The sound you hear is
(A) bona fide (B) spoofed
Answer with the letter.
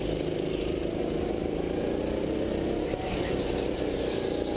A